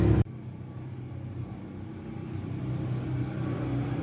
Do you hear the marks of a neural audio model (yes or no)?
no